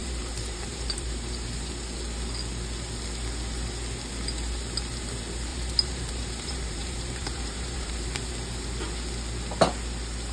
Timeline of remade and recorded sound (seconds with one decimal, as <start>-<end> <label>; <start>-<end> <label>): 0.0-1.7 remade; 1.7-5.5 recorded; 5.5-8.3 remade; 8.3-10.3 recorded